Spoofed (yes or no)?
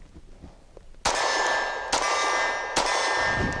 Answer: no